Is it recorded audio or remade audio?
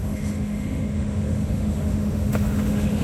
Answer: remade